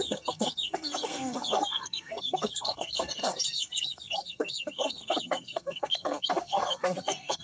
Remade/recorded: remade